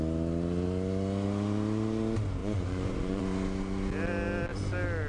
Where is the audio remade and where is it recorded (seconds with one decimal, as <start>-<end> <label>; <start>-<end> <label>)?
0.0-2.4 recorded; 2.4-3.2 remade; 3.2-5.1 recorded